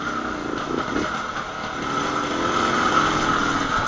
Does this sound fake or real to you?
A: real